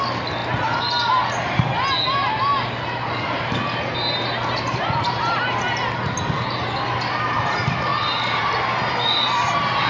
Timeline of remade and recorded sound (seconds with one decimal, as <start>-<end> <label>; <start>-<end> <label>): 0.0-9.9 recorded